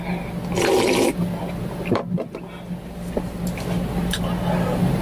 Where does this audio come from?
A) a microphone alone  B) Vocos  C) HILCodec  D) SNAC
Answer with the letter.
A